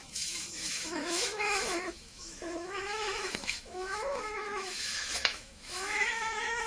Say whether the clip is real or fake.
fake